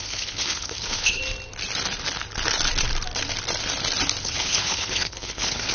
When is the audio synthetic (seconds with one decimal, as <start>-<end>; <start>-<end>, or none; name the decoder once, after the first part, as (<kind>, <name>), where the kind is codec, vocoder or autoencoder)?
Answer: 0.0-1.2 (codec, HILCodec); 4.2-5.7